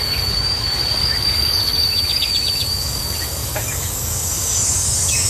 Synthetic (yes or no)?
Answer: yes